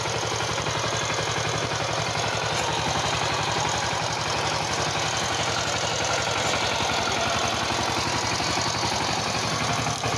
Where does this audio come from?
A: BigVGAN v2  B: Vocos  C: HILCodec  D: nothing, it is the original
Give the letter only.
D